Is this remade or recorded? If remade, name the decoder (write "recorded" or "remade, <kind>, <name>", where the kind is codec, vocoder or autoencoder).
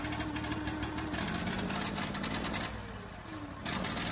recorded